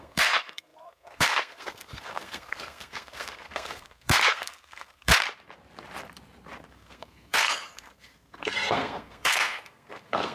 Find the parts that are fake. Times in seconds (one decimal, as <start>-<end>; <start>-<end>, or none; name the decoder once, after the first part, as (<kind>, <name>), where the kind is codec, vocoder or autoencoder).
0.0-5.1 (codec, SNAC); 6.7-10.3